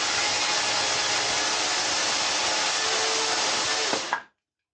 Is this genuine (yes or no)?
yes